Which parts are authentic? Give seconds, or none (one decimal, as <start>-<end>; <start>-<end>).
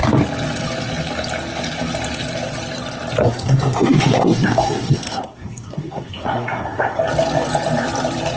0.0-3.2; 7.0-8.4